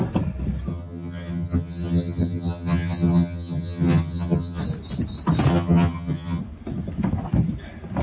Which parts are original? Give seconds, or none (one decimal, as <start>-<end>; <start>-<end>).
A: 0.0-0.7; 4.6-5.5; 6.4-8.0